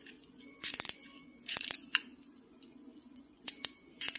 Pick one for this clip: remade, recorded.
remade